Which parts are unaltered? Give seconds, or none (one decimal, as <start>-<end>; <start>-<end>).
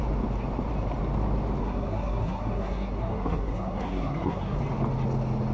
0.0-1.6; 4.6-5.5